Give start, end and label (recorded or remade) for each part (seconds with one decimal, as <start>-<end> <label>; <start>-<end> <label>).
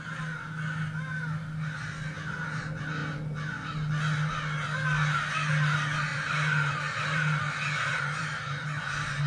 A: 0.0-6.1 recorded; 6.1-7.4 remade; 7.4-7.9 recorded; 7.9-8.8 remade; 8.8-9.3 recorded